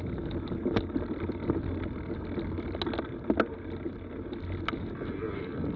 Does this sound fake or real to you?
real